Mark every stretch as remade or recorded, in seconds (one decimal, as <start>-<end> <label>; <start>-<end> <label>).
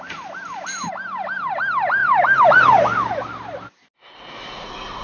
0.0-5.0 recorded